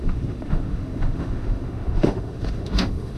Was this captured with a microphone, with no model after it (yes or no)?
no